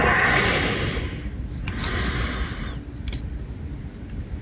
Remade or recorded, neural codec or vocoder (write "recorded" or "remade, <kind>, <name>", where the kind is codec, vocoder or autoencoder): recorded